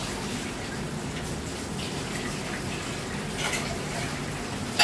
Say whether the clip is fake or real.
real